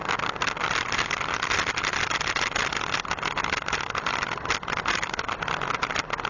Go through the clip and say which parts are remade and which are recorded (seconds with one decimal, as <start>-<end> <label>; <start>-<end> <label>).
0.0-6.3 recorded